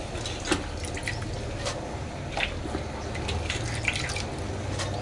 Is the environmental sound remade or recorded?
recorded